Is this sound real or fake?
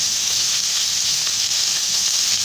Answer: fake